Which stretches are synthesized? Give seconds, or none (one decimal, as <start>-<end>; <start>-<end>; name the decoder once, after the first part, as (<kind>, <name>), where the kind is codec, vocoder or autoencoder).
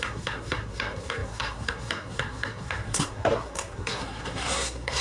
0.0-5.0 (codec, SNAC)